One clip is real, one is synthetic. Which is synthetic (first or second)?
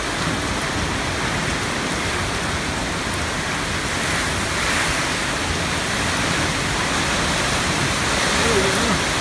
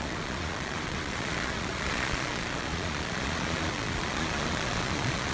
second